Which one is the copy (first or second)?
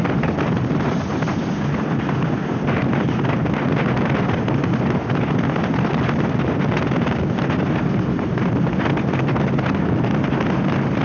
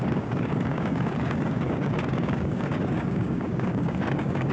second